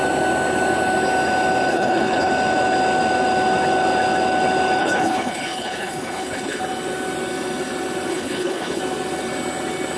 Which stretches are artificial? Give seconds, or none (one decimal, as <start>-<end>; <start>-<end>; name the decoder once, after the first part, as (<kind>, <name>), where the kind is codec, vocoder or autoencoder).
1.7-2.3 (codec, HILCodec); 4.8-6.6; 8.1-8.8